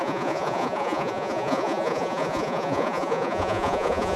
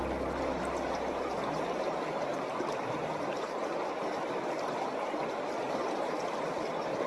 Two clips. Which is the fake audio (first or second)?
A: first